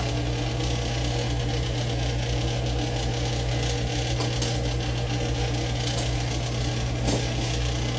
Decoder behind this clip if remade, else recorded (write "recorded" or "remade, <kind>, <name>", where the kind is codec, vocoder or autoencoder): recorded